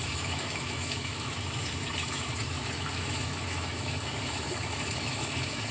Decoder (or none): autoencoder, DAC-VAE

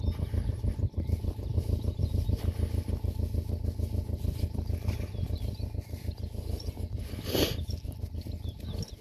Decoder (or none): none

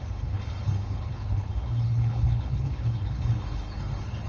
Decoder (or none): codec, HILCodec